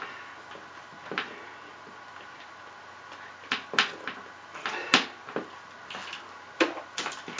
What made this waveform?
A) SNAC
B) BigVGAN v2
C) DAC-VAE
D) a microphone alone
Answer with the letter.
D